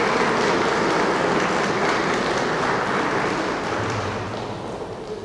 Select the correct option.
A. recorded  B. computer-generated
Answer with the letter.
A